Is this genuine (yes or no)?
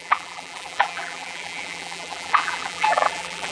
no